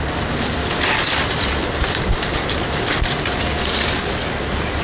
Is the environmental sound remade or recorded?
recorded